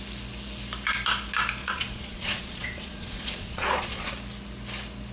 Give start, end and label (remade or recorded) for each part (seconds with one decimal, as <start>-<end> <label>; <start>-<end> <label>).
0.0-1.6 recorded; 1.6-4.1 remade; 4.1-5.1 recorded